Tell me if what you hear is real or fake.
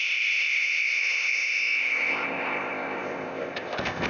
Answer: fake